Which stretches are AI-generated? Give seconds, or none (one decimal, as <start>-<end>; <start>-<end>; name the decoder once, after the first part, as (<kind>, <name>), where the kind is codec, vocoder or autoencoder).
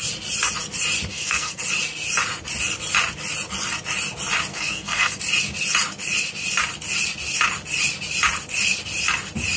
1.1-1.6 (codec, SNAC); 4.5-5.2